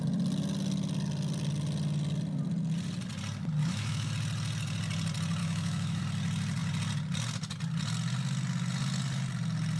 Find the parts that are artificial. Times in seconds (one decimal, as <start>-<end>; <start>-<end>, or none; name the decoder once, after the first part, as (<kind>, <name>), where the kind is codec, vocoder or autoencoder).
3.6-4.1 (autoencoder, DAC-VAE); 5.4-6.0